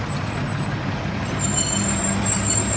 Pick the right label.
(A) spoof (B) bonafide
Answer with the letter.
B